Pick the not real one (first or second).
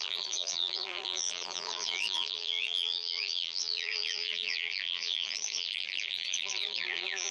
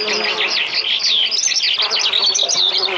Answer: first